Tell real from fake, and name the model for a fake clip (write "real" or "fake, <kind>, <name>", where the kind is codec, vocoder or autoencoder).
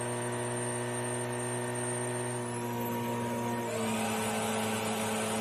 real